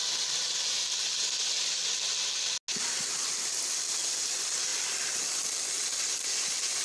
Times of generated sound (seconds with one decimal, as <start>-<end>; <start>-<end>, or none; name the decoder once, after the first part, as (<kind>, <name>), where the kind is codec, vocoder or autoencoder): none